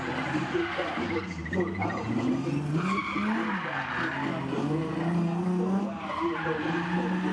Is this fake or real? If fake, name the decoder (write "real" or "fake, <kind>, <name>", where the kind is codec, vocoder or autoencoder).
real